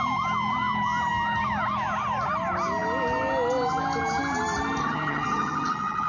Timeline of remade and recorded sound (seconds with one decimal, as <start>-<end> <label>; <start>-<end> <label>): 0.0-4.8 recorded; 4.8-6.1 remade